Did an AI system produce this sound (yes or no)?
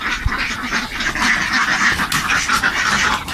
no